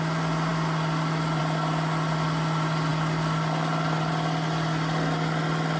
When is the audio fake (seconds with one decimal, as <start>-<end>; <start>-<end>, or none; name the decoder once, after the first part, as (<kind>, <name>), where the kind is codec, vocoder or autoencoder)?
none